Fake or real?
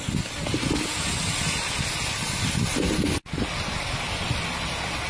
real